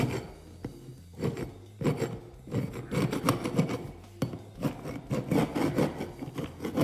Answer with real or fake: real